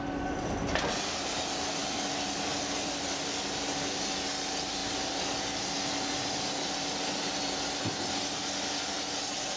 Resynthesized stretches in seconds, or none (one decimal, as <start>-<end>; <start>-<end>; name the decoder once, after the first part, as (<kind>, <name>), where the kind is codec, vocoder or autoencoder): none